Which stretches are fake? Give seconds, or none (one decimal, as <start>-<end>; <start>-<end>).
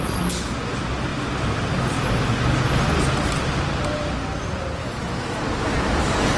4.8-5.4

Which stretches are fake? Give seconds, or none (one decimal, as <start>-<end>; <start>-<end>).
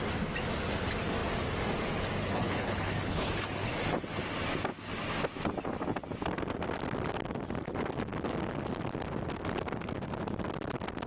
2.2-3.3